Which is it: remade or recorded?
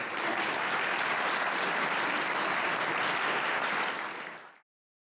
recorded